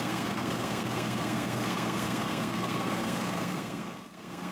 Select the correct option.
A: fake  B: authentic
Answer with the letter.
A